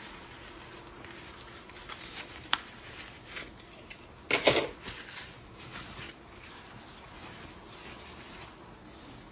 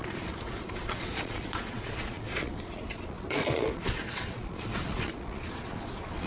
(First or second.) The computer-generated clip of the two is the second